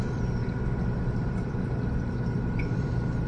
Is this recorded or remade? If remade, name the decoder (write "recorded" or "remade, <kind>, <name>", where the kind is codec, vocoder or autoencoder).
remade, vocoder, BigVGAN v2